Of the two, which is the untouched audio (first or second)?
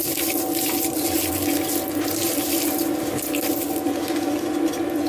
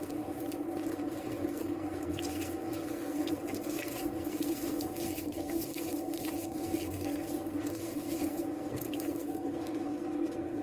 first